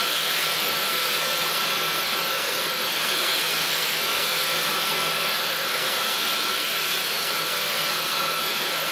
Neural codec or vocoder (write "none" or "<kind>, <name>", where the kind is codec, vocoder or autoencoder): codec, SNAC